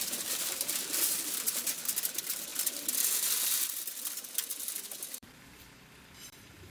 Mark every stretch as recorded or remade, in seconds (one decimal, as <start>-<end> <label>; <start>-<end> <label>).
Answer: 0.0-6.7 remade